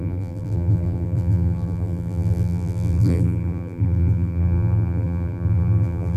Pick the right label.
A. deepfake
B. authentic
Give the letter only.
A